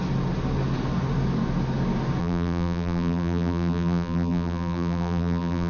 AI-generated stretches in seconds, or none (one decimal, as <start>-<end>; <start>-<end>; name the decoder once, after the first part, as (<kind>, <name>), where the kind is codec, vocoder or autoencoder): 2.2-5.7 (vocoder, BigVGAN v2)